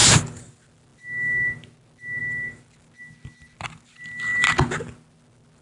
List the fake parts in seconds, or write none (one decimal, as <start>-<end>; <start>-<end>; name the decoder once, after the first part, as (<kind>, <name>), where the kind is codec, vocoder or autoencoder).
none